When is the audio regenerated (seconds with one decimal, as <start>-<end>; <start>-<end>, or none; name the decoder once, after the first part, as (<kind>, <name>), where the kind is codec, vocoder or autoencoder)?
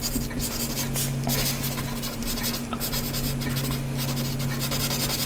none